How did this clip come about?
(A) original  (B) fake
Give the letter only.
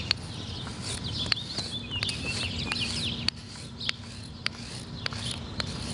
A